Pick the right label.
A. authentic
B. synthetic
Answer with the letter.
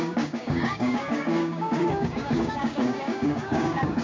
B